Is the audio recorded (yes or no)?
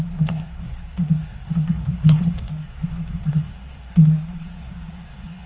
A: no